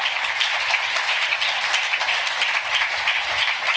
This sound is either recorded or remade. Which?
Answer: recorded